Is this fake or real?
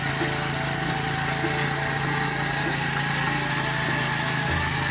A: real